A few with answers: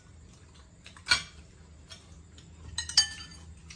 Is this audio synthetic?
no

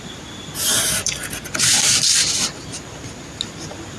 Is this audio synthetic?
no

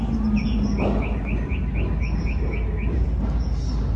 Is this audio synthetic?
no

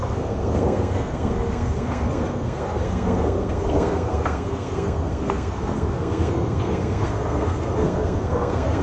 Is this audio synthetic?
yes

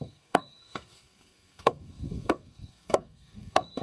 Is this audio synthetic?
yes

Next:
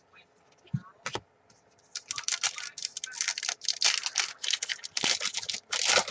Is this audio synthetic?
no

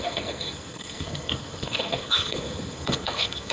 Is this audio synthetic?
yes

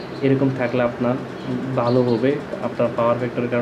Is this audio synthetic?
no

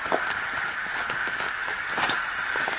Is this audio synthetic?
no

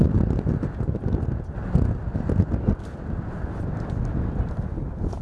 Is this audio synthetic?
no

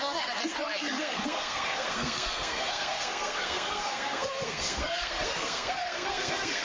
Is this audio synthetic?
yes